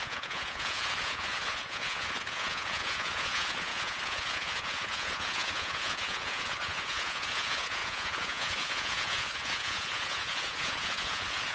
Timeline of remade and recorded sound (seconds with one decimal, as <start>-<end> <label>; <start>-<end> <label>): 0.0-11.5 remade